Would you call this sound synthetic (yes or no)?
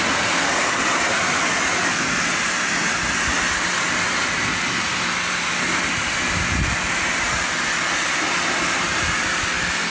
no